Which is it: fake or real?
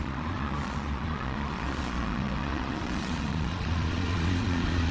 fake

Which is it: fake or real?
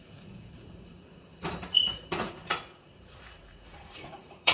fake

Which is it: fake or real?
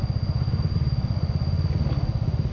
real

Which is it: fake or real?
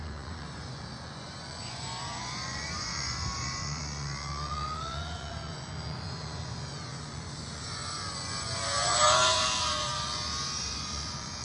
fake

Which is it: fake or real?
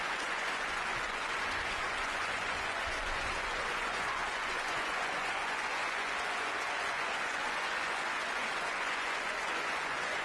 fake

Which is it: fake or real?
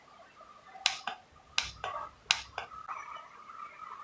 real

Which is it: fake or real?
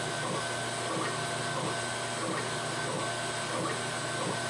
real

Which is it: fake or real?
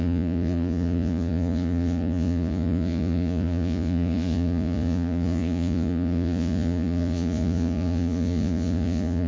fake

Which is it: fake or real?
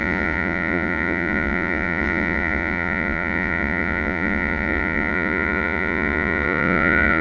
fake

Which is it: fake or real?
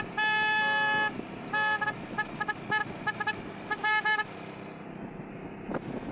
real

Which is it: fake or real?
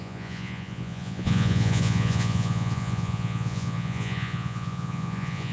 fake